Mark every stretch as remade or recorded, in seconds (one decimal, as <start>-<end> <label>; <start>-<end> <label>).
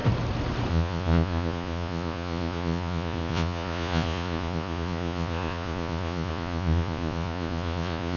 0.0-0.7 recorded; 0.7-8.2 remade